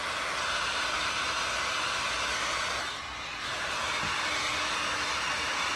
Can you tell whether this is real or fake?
real